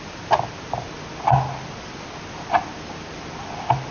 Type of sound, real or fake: real